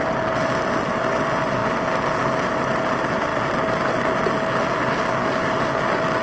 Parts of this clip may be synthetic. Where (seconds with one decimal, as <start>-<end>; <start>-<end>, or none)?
5.2-5.7